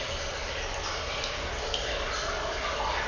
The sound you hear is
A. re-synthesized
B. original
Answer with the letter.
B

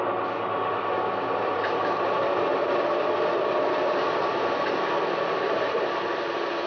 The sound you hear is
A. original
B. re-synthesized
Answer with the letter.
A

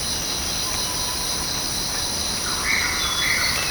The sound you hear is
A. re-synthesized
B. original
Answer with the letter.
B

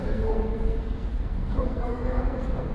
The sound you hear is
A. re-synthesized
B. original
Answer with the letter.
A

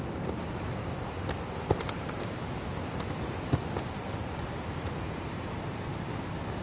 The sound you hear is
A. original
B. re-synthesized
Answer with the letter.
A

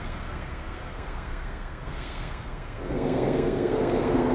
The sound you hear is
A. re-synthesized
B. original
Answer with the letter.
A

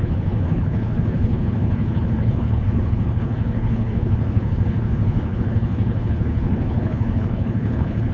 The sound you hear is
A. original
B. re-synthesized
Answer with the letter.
B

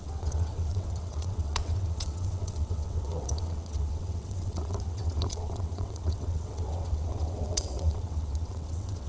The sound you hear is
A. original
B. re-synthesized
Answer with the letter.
B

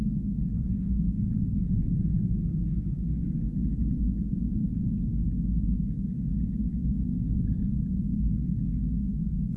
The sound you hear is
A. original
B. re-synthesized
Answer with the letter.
A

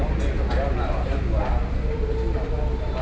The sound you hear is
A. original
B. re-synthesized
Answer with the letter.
A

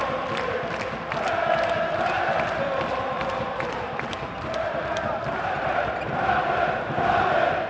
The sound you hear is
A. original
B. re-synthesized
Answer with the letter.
A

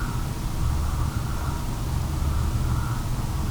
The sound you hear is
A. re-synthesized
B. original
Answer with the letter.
B